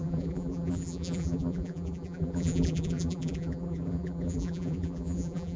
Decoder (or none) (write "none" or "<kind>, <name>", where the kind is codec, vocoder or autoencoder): vocoder, BigVGAN v2